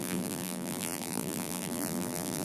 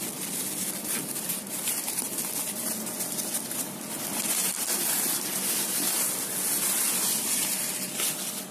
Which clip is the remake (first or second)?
first